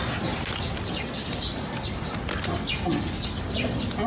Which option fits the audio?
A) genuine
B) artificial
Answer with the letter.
A